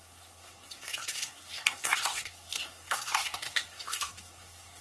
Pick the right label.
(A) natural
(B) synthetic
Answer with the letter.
B